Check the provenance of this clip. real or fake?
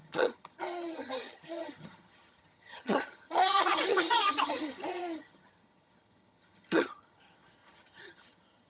fake